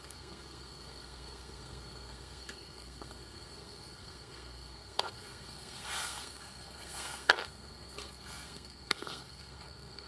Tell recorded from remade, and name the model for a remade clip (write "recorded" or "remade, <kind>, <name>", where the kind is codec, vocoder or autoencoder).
remade, codec, SNAC